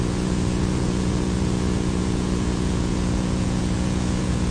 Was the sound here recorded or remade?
remade